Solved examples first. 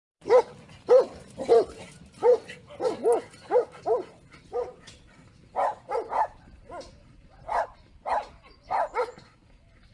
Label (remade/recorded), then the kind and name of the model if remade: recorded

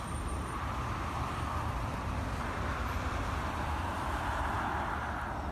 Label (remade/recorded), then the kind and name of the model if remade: recorded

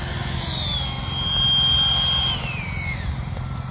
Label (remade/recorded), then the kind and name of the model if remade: recorded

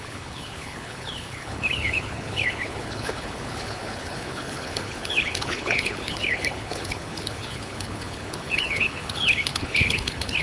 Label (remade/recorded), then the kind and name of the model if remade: remade, codec, HILCodec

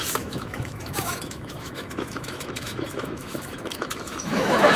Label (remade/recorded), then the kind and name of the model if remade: remade, autoencoder, DAC-VAE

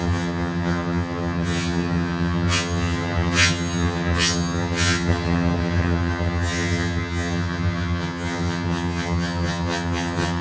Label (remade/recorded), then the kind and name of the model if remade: remade, vocoder, HiFi-GAN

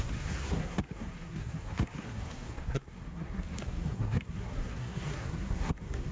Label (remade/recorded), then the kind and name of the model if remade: remade, codec, SNAC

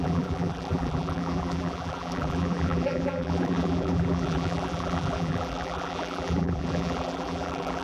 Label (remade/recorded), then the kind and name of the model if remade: remade, vocoder, BigVGAN v2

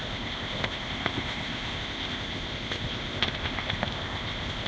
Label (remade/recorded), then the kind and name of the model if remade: remade, codec, ZipCodec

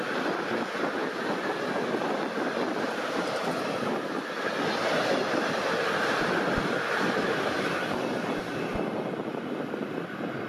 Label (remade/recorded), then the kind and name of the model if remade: recorded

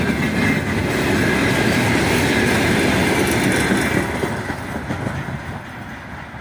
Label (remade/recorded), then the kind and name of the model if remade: recorded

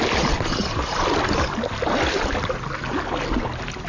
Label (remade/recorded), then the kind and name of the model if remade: recorded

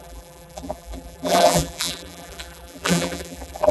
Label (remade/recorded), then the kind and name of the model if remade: remade, vocoder, BigVGAN v2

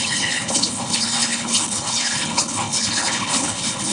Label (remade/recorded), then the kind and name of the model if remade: remade, codec, HILCodec